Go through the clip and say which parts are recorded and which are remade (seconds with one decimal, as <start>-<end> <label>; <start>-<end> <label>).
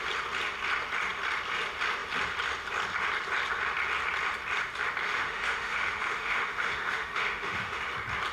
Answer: 0.0-5.0 recorded; 5.0-7.8 remade; 7.8-8.3 recorded